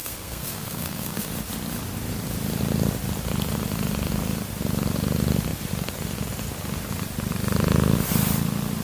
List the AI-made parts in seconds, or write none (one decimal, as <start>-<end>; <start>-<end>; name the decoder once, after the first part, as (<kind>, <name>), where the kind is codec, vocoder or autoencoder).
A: 0.0-1.3 (codec, SNAC)